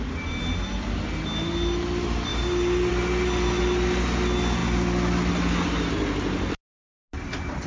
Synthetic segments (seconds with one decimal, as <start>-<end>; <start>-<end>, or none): none